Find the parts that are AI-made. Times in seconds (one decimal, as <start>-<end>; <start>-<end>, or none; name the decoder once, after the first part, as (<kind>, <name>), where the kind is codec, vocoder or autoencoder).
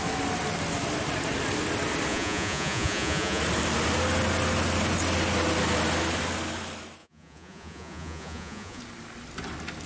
2.1-3.4 (vocoder, Vocos); 7.0-8.8